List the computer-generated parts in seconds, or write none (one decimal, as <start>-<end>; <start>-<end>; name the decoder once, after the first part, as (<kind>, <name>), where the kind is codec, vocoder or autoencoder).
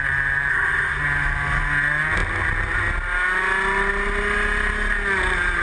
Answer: 0.5-1.0 (codec, SNAC)